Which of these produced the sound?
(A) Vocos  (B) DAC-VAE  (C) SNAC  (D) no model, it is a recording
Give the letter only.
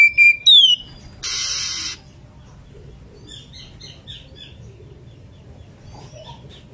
D